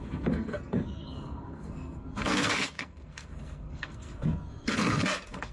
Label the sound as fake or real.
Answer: fake